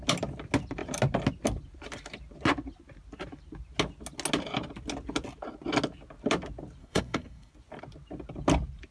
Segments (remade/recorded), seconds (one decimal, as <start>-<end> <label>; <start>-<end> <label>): 0.0-6.8 recorded; 6.8-7.5 remade; 7.5-8.9 recorded